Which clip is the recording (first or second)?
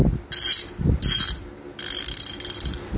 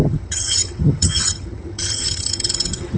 first